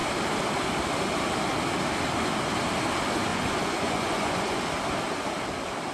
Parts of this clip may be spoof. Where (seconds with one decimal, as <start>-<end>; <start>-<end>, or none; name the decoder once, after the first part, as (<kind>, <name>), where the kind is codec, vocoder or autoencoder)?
3.3-4.6 (vocoder, Vocos)